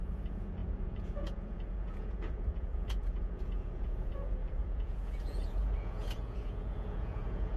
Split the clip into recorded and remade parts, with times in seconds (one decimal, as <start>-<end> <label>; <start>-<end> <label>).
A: 0.0-7.6 remade